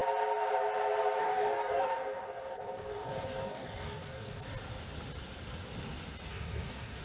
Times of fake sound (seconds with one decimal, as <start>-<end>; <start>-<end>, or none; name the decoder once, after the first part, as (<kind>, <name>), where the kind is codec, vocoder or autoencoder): 1.2-4.4 (codec, DAC); 6.3-7.0